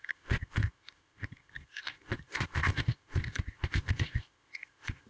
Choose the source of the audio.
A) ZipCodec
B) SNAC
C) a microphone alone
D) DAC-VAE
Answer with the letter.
A